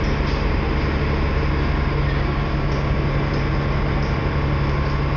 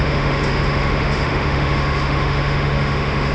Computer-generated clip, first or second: second